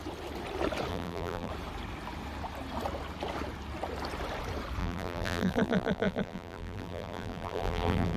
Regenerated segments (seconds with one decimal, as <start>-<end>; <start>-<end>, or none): 0.9-1.5; 4.8-8.2

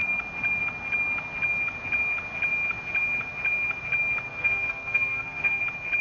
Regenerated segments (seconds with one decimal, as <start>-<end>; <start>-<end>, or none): 4.3-5.6